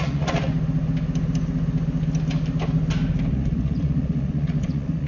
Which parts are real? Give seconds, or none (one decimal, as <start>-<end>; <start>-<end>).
0.5-3.3